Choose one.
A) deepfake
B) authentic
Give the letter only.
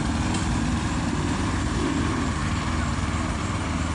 B